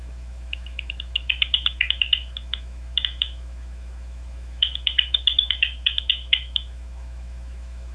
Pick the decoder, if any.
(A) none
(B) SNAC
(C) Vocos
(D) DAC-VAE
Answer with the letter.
D